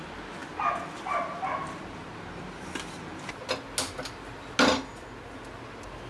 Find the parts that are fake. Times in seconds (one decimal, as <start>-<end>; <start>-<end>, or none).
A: none